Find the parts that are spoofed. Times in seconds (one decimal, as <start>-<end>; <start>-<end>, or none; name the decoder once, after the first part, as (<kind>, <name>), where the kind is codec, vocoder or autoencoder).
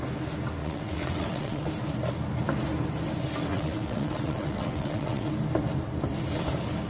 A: 0.6-1.7 (vocoder, WaveNeXt); 3.5-5.3